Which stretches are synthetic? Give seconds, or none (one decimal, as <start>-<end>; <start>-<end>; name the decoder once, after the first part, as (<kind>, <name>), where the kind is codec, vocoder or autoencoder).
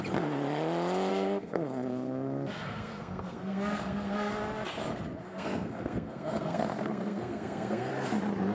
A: 1.1-4.3 (codec, SNAC); 5.3-7.9